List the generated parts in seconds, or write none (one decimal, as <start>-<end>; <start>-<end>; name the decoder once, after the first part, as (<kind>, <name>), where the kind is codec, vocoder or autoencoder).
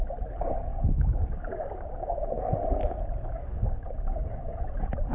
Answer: 0.7-2.5 (codec, DAC); 3.2-4.6